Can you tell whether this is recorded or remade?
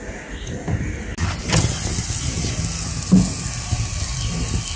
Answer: recorded